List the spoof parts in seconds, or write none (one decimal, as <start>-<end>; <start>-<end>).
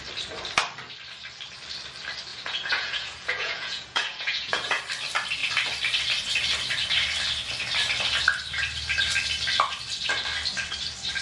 2.3-4.8